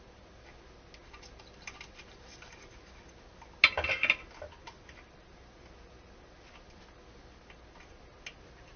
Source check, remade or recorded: recorded